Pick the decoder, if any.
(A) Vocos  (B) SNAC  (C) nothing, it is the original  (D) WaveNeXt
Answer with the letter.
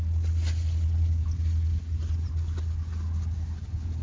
C